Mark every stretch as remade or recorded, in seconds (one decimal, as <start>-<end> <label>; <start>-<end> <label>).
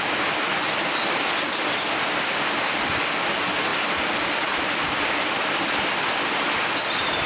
0.0-3.7 recorded; 3.7-7.3 remade